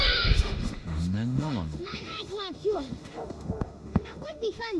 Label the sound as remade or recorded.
remade